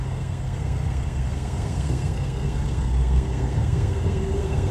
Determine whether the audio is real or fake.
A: fake